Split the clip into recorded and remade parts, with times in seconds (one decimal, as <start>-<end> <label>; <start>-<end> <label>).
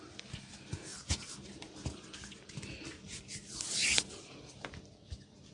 0.0-5.5 recorded